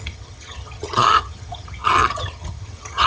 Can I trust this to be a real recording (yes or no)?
no